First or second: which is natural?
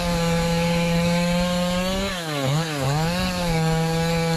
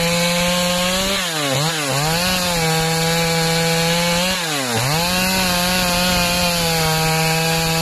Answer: second